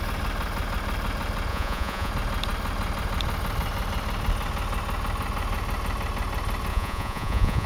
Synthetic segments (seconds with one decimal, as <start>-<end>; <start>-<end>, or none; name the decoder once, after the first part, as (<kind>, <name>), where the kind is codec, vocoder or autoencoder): 1.5-2.1 (vocoder, Vocos); 6.7-7.7